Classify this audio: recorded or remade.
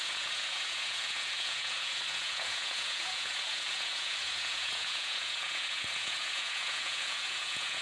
remade